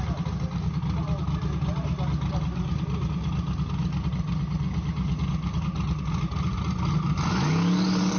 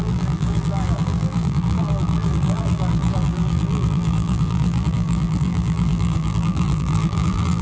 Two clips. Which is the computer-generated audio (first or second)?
second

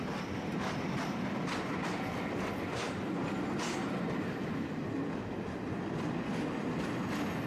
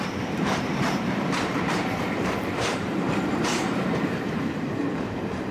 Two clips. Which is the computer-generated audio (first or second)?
second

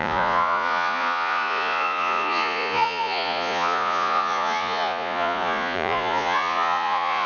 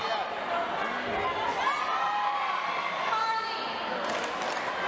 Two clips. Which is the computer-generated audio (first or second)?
first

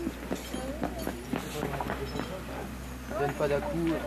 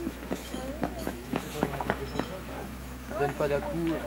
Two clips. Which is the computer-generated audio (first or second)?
second